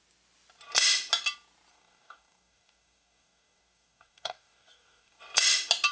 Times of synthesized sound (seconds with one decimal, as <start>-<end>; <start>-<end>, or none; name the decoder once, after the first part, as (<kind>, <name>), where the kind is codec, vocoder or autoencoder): 1.7-5.2 (codec, DAC)